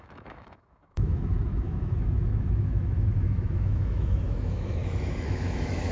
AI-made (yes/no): yes